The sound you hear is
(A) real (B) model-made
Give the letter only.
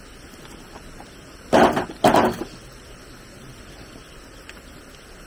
A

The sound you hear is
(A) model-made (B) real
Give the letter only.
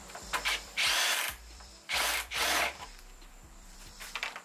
A